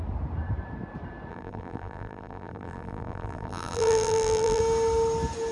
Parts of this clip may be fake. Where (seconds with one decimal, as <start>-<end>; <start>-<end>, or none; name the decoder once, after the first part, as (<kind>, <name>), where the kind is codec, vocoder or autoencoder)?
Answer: 1.3-4.6 (vocoder, BigVGAN v2)